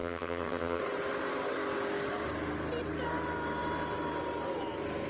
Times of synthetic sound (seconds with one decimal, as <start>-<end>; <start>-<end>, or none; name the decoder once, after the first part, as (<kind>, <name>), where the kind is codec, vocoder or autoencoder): 0.0-0.8 (vocoder, HiFi-GAN)